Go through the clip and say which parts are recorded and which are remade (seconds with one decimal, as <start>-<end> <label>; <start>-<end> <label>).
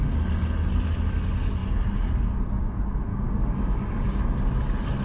0.0-3.1 recorded; 3.1-4.4 remade; 4.4-5.0 recorded